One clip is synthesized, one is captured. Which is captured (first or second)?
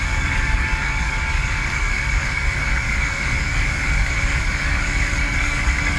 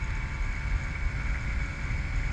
second